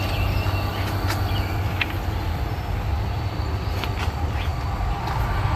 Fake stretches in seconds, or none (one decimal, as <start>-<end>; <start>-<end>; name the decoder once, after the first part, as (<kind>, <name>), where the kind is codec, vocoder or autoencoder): none